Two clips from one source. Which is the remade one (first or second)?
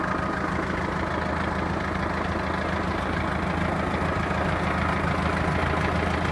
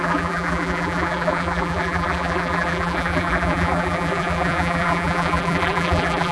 second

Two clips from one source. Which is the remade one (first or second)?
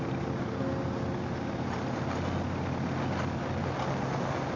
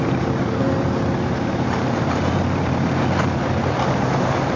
second